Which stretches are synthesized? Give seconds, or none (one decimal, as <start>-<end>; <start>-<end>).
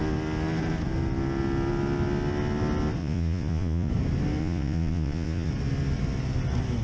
3.0-3.9; 4.4-5.5